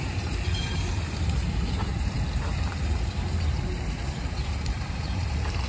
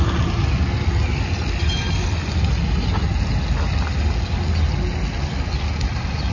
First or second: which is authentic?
second